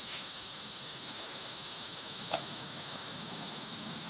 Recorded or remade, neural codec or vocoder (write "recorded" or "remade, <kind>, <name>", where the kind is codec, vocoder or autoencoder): remade, autoencoder, DAC-VAE